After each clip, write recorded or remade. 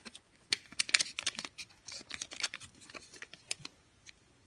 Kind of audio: remade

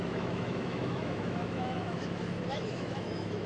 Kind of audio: remade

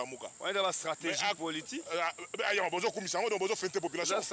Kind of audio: recorded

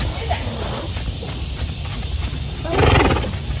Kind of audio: recorded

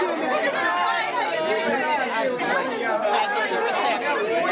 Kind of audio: recorded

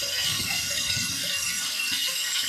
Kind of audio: remade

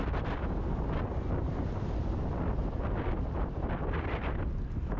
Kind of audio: recorded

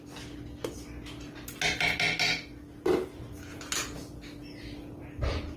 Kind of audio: recorded